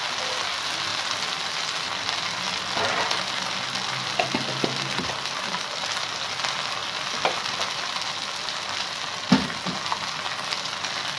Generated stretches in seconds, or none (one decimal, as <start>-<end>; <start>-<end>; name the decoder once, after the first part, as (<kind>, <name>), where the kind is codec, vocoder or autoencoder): none